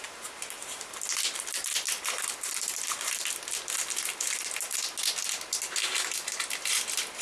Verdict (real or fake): real